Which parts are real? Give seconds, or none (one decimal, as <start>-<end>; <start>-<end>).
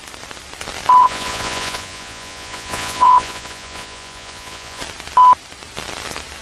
0.0-1.0; 4.8-6.4